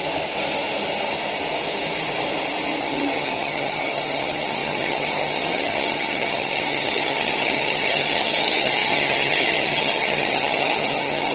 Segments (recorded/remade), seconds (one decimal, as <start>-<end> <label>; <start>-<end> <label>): 0.0-2.8 recorded; 2.8-11.3 remade